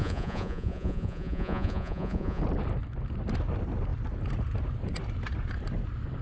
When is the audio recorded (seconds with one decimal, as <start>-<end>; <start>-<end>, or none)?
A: 2.4-6.2